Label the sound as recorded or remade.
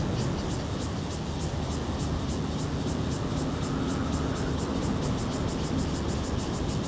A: recorded